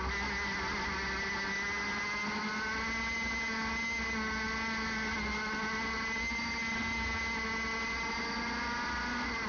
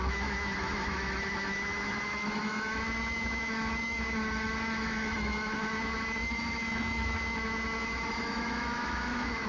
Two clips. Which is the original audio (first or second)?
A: first